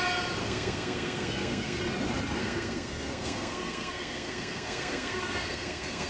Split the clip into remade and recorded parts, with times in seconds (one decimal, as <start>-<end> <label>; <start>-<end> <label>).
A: 0.0-0.4 recorded; 0.4-1.8 remade; 1.8-2.4 recorded; 2.4-6.1 remade